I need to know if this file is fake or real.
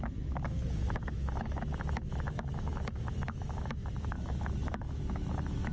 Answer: fake